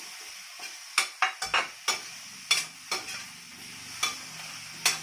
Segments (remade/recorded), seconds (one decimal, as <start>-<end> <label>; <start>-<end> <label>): 0.0-5.0 recorded